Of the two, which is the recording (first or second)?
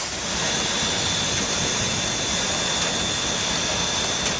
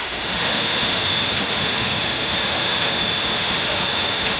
first